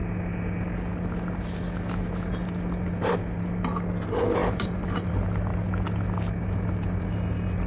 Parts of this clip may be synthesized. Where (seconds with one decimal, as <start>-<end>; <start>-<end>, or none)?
4.4-5.1